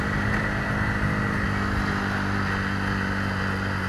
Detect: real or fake real